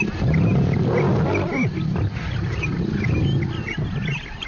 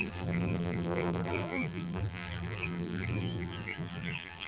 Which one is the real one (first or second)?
first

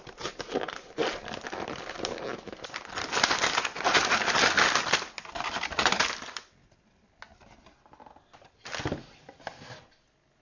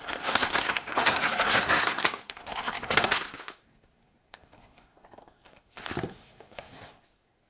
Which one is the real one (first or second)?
first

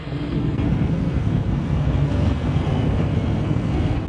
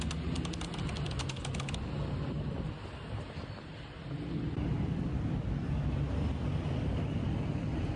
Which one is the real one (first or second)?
second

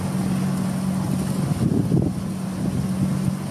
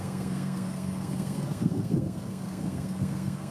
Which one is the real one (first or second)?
first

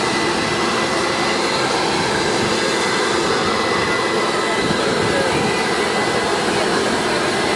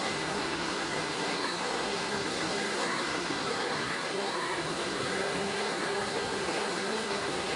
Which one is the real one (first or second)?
first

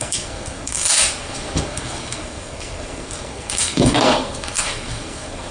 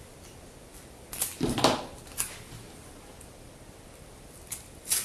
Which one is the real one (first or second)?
second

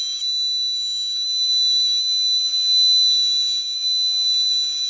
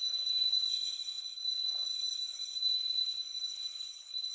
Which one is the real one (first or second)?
first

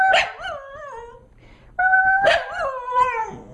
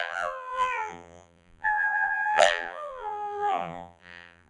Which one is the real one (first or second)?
first